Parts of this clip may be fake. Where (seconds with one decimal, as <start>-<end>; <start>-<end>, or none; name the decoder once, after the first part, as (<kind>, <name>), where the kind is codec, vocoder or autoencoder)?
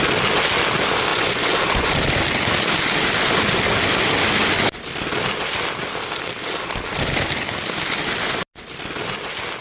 1.1-1.9 (vocoder, Vocos)